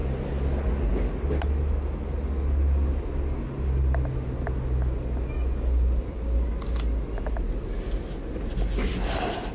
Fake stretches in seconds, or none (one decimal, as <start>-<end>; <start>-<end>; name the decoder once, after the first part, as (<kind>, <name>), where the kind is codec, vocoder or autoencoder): none